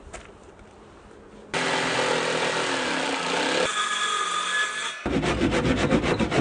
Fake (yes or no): no